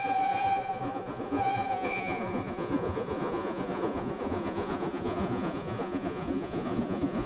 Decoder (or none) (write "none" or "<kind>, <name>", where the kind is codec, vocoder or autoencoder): vocoder, Vocos